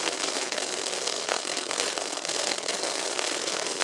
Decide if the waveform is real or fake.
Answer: fake